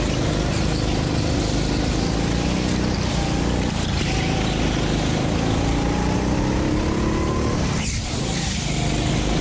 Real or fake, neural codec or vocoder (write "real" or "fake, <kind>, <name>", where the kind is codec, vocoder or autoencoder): real